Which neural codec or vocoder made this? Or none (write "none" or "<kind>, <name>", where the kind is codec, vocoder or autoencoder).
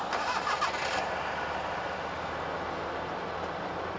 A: none